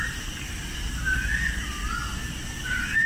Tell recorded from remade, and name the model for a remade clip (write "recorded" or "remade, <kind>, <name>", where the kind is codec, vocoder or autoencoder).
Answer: recorded